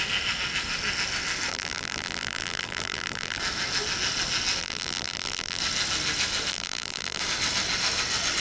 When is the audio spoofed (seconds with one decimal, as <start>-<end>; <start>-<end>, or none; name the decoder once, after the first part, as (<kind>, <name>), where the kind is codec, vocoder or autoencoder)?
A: 1.5-3.4 (vocoder, BigVGAN v2); 4.6-5.6; 6.5-7.2